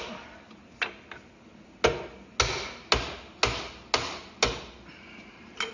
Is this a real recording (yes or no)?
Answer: yes